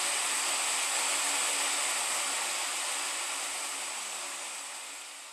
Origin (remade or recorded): recorded